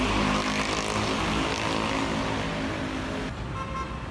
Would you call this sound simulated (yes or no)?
no